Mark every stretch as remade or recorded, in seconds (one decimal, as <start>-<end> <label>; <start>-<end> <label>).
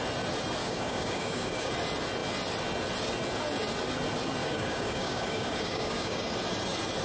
0.0-0.6 recorded; 0.6-1.7 remade; 1.7-4.4 recorded; 4.4-6.3 remade; 6.3-7.0 recorded